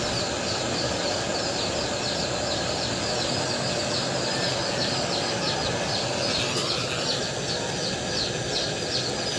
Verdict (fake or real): real